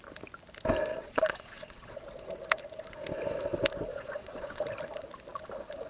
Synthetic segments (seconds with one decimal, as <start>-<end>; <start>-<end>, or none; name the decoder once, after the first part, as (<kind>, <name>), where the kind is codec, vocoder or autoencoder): 0.9-2.3 (vocoder, Vocos); 3.9-4.6